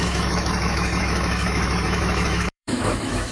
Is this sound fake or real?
fake